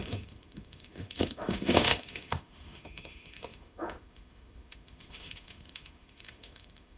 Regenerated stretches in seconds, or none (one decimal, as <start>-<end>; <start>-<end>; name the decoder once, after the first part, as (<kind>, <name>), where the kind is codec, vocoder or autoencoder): 0.0-7.0 (autoencoder, DAC-VAE)